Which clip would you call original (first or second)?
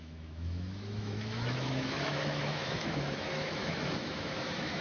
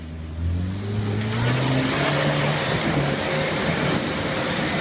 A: second